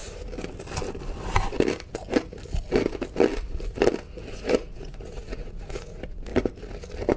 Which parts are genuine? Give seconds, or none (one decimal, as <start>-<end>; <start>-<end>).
0.0-4.3; 6.3-7.2